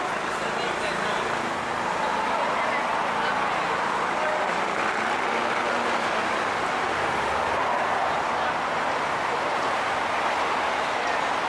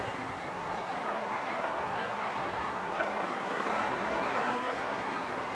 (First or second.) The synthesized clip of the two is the second